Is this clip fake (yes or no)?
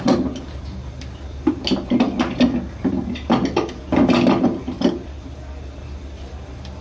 no